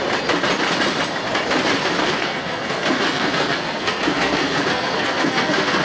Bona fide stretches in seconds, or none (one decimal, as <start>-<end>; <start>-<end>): 0.0-2.0

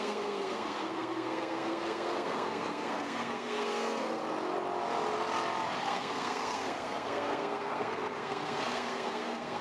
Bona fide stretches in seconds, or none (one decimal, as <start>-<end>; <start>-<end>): 4.2-5.8

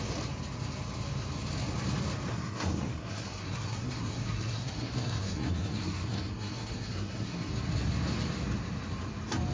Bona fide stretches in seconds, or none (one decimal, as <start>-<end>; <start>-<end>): 0.0-2.3; 7.5-9.5

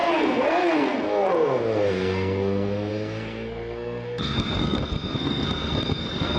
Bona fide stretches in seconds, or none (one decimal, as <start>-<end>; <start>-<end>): none

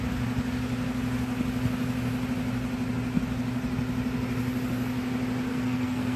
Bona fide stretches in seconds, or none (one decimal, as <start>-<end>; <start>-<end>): 0.0-5.5

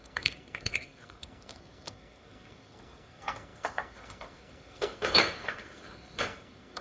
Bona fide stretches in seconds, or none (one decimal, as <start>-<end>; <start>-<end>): none

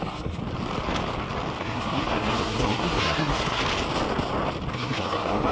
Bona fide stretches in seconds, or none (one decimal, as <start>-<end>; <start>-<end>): 0.4-1.6; 3.6-4.7

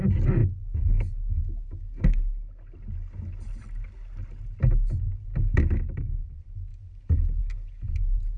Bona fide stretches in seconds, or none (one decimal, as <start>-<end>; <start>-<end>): 0.0-8.4